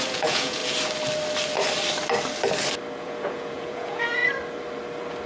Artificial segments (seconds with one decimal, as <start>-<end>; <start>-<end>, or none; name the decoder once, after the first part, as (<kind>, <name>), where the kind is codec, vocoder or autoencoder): 0.0-0.6 (vocoder, Vocos); 3.0-4.2

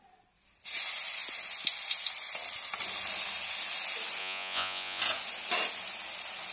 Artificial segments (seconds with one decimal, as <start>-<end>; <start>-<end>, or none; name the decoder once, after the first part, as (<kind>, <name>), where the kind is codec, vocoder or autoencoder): 4.2-5.0 (vocoder, Vocos)

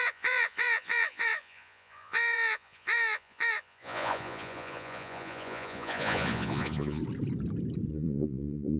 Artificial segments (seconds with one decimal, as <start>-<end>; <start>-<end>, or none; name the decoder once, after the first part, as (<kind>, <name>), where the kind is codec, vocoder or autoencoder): 0.0-7.0 (vocoder, Vocos); 7.9-8.8

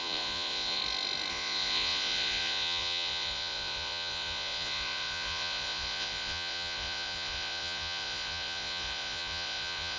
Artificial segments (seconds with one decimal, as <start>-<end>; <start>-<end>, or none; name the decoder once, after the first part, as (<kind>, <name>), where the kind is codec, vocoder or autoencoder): 0.0-0.8 (vocoder, Vocos); 1.3-10.0

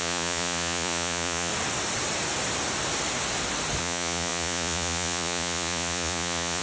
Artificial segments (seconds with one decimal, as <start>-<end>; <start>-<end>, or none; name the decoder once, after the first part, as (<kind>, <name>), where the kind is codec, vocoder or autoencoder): 0.0-1.5 (vocoder, Vocos); 3.8-6.6